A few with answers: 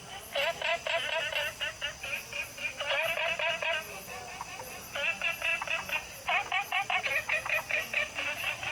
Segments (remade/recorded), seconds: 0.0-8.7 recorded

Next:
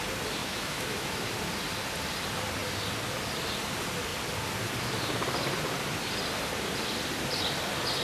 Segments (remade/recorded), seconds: 0.0-0.4 recorded; 0.4-1.2 remade; 1.2-8.0 recorded